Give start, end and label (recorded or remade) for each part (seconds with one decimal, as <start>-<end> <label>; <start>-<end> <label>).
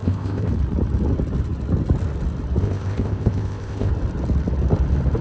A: 0.0-0.5 remade; 0.5-2.6 recorded; 2.6-3.9 remade; 3.9-5.2 recorded